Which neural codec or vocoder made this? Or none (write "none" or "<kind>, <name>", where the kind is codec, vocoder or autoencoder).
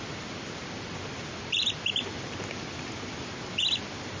none